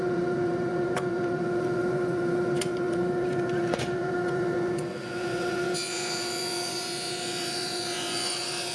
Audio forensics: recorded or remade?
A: remade